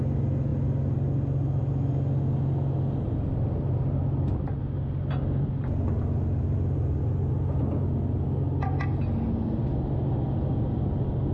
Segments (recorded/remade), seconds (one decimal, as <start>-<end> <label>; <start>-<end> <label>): 0.0-11.3 recorded